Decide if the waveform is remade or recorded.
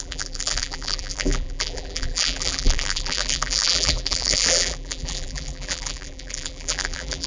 remade